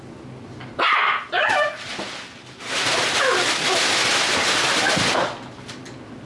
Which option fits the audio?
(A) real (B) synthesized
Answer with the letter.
A